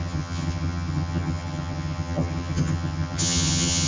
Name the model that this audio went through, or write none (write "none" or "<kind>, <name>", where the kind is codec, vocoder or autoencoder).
vocoder, HiFi-GAN